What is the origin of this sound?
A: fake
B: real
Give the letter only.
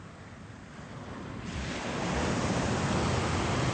B